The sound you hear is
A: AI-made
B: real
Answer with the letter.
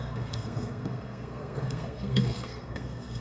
A